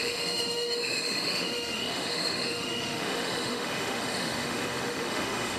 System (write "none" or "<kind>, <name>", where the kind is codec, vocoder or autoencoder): autoencoder, DAC-VAE